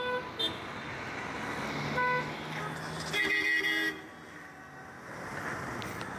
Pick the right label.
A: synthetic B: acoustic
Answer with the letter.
B